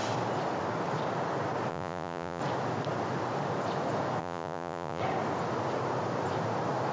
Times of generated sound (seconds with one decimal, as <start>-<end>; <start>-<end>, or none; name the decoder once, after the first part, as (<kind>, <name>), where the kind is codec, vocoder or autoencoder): 1.7-2.4 (vocoder, Vocos); 4.2-5.0